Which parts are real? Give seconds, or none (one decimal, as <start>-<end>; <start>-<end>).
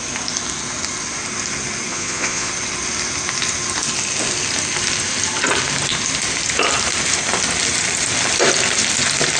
0.0-1.9; 2.5-9.4